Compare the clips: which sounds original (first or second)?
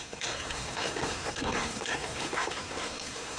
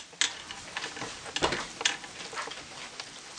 second